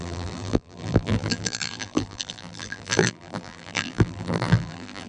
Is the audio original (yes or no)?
no